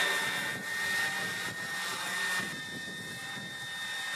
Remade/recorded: recorded